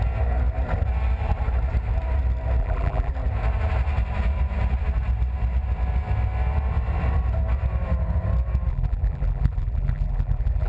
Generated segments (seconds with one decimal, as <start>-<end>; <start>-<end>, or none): 2.6-3.1; 8.7-10.7